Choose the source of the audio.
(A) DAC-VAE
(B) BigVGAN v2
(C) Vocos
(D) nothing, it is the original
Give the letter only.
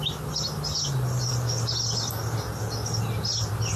D